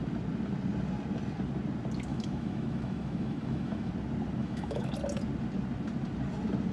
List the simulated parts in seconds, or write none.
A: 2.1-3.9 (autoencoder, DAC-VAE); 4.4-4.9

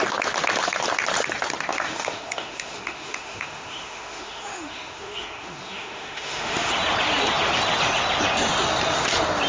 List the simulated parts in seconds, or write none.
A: 1.7-6.7 (autoencoder, DAC-VAE)

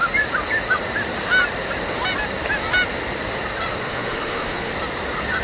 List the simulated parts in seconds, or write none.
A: 3.8-4.7 (autoencoder, DAC-VAE)

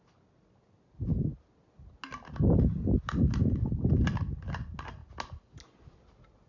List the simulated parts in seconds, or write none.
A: none

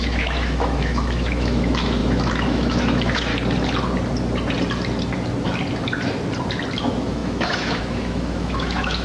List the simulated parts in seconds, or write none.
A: 0.0-3.3 (autoencoder, DAC-VAE); 6.8-9.0

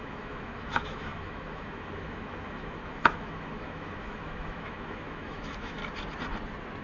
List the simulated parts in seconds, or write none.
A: 0.0-5.8 (autoencoder, DAC-VAE)

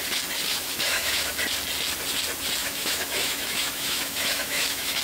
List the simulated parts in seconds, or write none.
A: 0.5-1.3 (autoencoder, DAC-VAE); 2.6-5.0